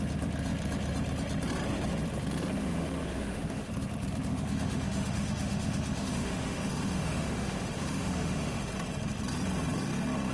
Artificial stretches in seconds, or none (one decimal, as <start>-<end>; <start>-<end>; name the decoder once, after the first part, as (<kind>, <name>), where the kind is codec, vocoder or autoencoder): 2.6-3.7 (autoencoder, DAC-VAE); 4.3-8.7